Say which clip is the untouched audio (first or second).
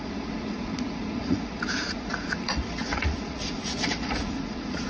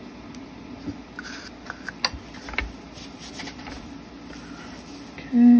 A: second